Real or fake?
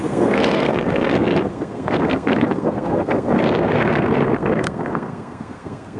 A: fake